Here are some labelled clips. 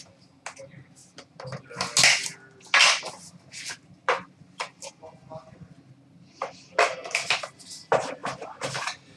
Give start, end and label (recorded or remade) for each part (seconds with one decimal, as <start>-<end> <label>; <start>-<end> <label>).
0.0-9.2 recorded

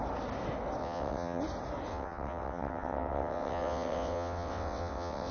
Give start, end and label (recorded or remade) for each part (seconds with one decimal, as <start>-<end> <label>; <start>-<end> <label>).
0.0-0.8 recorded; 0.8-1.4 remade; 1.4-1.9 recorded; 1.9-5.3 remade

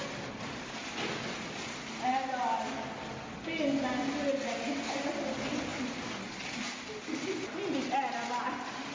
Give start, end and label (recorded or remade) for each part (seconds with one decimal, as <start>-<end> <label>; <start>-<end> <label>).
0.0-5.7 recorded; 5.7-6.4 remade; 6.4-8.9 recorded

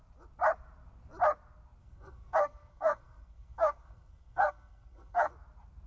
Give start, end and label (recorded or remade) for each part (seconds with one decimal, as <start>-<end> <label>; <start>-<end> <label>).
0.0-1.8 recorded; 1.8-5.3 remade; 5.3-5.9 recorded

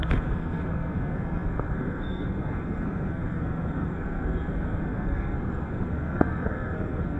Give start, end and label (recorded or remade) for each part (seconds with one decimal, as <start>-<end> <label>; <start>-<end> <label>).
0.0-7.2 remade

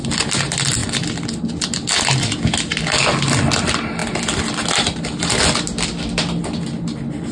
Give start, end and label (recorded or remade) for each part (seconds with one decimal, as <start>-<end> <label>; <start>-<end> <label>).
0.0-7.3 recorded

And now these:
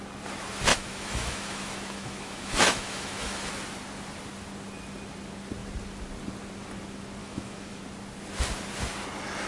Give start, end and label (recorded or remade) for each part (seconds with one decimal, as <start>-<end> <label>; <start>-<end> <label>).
0.0-0.7 recorded; 0.7-3.5 remade; 3.5-7.2 recorded; 7.2-7.8 remade; 7.8-9.5 recorded

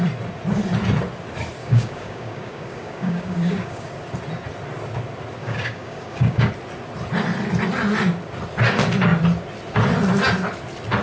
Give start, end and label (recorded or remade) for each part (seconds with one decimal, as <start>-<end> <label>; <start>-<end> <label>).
0.0-1.6 recorded; 1.6-3.9 remade; 3.9-5.4 recorded; 5.4-6.5 remade; 6.5-11.0 recorded